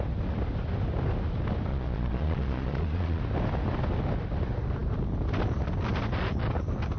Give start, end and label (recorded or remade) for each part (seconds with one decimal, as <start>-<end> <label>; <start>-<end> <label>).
0.0-1.7 recorded; 1.7-3.2 remade; 3.2-7.0 recorded